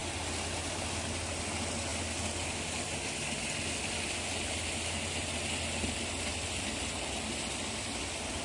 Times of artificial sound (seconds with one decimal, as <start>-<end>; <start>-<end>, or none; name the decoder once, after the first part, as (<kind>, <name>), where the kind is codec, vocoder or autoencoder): none